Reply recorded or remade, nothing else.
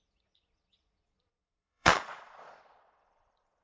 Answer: remade